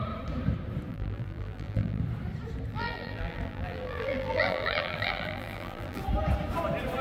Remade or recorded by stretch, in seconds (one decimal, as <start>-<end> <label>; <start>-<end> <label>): 0.0-0.9 recorded; 0.9-2.0 remade; 2.0-2.7 recorded; 2.7-6.0 remade; 6.0-7.0 recorded